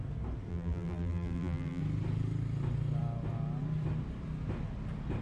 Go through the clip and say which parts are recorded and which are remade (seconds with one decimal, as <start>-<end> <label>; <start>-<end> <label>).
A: 0.0-0.5 recorded; 0.5-1.8 remade; 1.8-5.2 recorded